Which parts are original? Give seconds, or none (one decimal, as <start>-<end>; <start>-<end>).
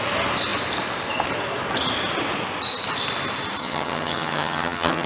0.0-3.6